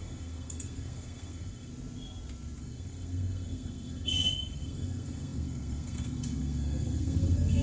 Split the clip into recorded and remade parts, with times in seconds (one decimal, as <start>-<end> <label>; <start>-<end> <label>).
0.0-1.7 remade; 1.7-2.6 recorded; 2.6-7.6 remade